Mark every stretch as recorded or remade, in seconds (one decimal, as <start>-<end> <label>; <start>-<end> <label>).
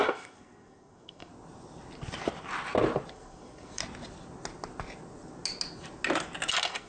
0.0-1.3 remade; 1.3-3.1 recorded; 3.1-3.8 remade; 3.8-6.5 recorded; 6.5-6.9 remade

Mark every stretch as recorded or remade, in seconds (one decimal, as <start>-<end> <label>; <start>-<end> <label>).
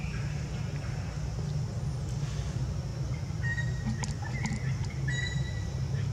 0.0-6.1 recorded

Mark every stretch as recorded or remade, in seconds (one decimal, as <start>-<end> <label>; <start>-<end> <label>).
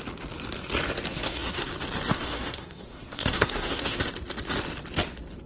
0.0-1.1 recorded; 1.1-1.7 remade; 1.7-2.1 recorded; 2.1-4.0 remade; 4.0-5.5 recorded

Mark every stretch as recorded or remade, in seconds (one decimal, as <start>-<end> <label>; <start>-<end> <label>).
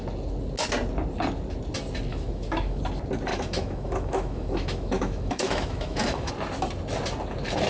0.0-2.1 recorded; 2.1-2.8 remade; 2.8-3.3 recorded; 3.3-6.3 remade; 6.3-7.7 recorded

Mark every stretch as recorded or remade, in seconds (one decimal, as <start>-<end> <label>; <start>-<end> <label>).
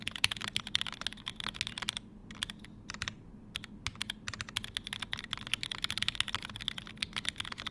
0.0-7.7 recorded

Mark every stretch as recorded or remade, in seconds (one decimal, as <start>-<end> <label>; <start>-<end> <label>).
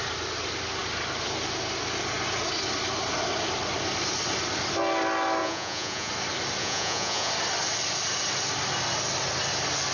0.0-5.4 recorded; 5.4-6.1 remade; 6.1-6.6 recorded; 6.6-7.3 remade; 7.3-9.9 recorded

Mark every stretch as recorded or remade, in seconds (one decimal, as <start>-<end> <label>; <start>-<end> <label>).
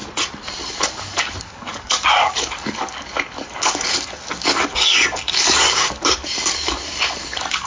0.0-0.7 recorded; 0.7-7.7 remade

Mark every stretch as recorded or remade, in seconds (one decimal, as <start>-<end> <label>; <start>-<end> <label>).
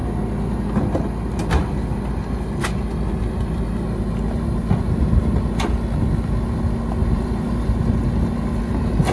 0.0-7.0 recorded; 7.0-7.7 remade; 7.7-9.1 recorded